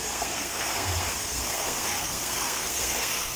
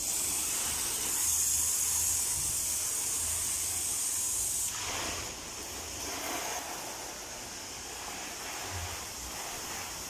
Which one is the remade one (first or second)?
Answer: first